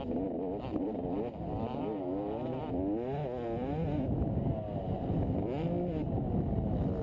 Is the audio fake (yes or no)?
no